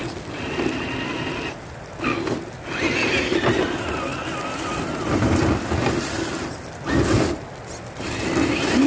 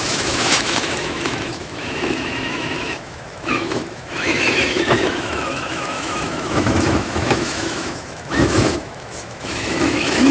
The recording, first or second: first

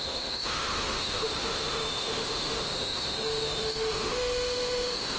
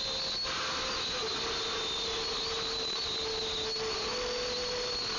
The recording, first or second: second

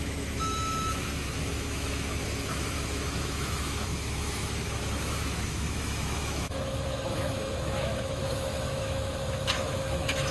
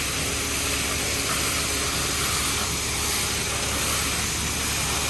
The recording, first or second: second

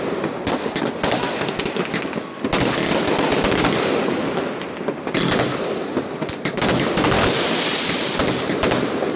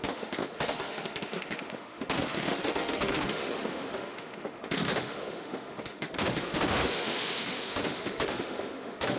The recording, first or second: first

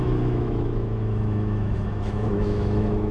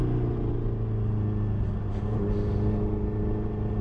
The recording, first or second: second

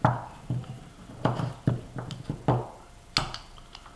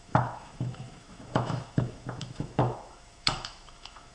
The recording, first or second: first